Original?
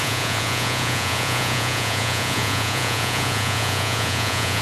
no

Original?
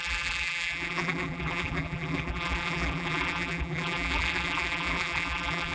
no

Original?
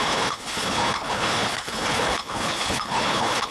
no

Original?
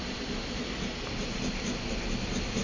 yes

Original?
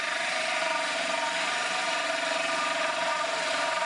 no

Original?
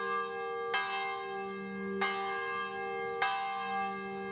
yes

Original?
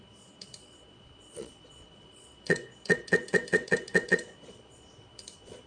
no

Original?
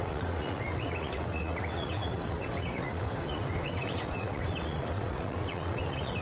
no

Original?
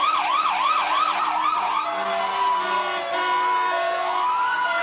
yes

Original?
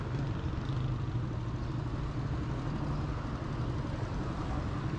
yes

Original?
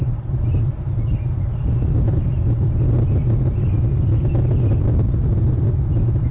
yes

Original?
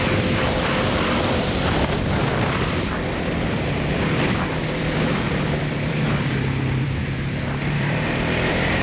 no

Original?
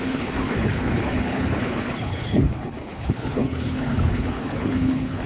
no